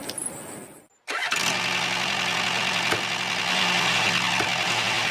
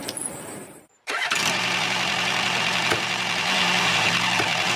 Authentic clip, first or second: first